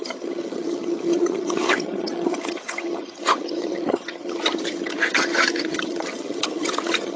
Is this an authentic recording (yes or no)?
no